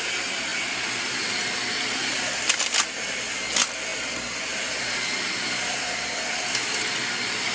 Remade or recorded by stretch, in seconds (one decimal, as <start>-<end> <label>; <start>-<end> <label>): 0.0-7.5 recorded